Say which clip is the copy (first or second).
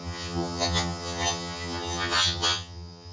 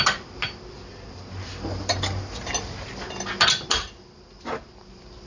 first